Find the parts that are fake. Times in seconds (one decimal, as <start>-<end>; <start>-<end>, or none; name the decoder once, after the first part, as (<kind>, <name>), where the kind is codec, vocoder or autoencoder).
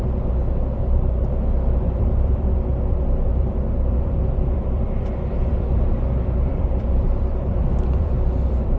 1.8-2.7 (vocoder, BigVGAN v2); 3.3-8.8